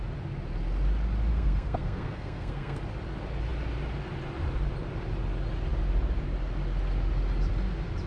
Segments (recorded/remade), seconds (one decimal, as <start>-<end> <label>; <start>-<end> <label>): 0.0-1.3 recorded; 1.3-2.8 remade; 2.8-8.1 recorded